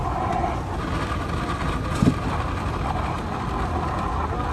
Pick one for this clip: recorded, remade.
recorded